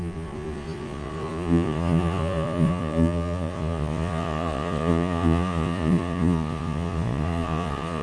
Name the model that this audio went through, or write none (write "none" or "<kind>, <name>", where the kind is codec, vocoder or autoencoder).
vocoder, Vocos